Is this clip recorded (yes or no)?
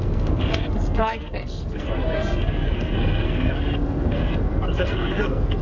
no